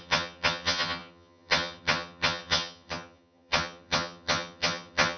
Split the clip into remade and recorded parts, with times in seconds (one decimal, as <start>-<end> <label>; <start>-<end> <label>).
0.0-5.2 remade